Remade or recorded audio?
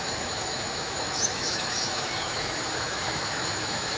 remade